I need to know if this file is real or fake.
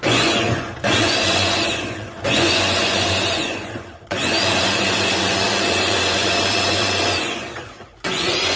fake